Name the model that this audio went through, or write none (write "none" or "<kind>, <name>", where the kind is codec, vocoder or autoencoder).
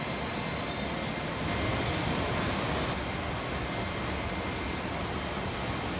none